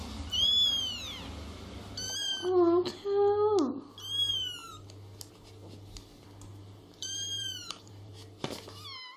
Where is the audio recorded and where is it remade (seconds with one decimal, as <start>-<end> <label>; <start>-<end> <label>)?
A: 0.0-6.5 recorded; 6.5-8.1 remade; 8.1-9.2 recorded